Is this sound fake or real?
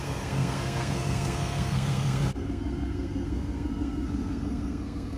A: fake